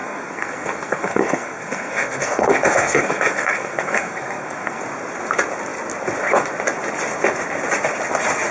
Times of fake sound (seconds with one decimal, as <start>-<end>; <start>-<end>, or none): 0.0-4.8